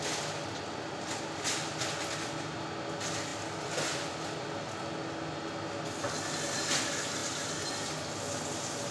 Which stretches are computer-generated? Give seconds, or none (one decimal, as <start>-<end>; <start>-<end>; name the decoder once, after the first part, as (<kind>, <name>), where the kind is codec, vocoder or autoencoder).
7.2-7.9 (vocoder, BigVGAN v2)